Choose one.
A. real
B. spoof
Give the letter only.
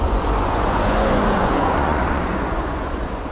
B